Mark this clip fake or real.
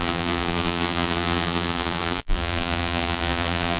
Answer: fake